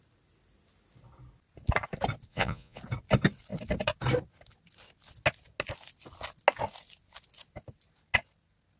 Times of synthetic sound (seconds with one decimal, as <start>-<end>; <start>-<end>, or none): 2.3-2.8